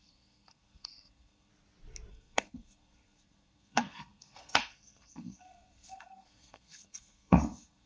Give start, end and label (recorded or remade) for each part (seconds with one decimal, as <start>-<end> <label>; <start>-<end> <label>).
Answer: 0.0-1.5 remade; 1.5-2.1 recorded; 2.1-7.9 remade

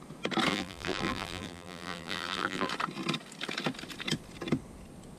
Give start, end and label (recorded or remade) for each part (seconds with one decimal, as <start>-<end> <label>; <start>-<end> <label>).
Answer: 0.0-0.5 recorded; 0.5-2.7 remade; 2.7-5.2 recorded

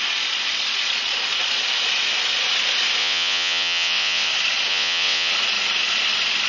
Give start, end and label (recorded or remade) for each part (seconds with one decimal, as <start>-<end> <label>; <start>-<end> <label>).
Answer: 0.0-3.0 recorded; 3.0-4.3 remade; 4.3-4.7 recorded; 4.7-5.3 remade; 5.3-6.5 recorded

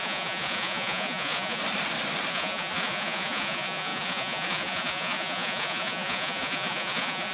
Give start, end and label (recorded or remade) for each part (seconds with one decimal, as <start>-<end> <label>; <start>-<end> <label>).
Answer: 0.0-1.6 remade; 1.6-2.3 recorded; 2.3-7.3 remade

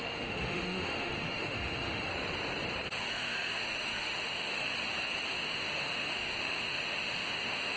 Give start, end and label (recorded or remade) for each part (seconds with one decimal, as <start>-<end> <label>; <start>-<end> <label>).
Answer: 0.0-2.1 remade; 2.1-3.0 recorded; 3.0-4.7 remade; 4.7-5.3 recorded; 5.3-7.8 remade

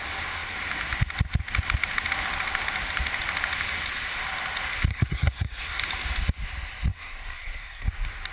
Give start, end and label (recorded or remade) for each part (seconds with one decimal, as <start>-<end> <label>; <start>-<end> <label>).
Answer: 0.0-4.9 recorded; 4.9-5.8 remade; 5.8-6.9 recorded; 6.9-7.9 remade; 7.9-8.3 recorded

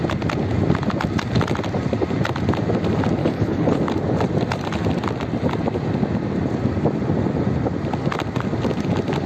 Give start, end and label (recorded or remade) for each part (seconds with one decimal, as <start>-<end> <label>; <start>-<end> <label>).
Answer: 0.0-3.2 recorded; 3.2-3.8 remade; 3.8-9.3 recorded

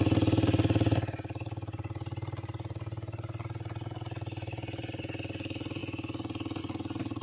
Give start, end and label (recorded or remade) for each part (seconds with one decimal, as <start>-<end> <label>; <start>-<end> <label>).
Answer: 0.0-7.2 recorded